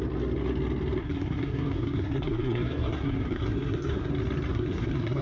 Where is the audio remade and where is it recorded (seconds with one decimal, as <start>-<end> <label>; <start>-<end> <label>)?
0.0-1.0 recorded; 1.0-4.1 remade; 4.1-4.5 recorded; 4.5-5.2 remade